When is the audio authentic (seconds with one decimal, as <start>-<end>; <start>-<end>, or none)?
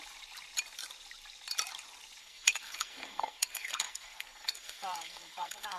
0.0-2.2